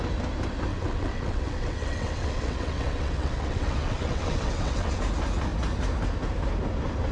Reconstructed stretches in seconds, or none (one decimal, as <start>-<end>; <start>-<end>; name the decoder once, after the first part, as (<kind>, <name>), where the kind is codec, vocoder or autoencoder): 0.7-5.0 (vocoder, WaveNeXt)